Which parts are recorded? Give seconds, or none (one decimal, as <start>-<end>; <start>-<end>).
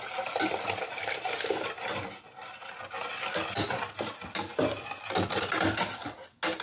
0.0-6.6